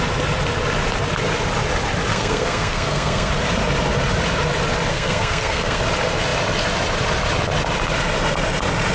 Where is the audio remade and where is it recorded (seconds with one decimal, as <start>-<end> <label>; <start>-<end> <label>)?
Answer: 0.0-2.1 recorded; 2.1-3.3 remade; 3.3-4.9 recorded; 4.9-5.8 remade; 5.8-8.9 recorded